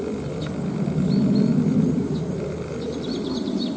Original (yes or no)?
yes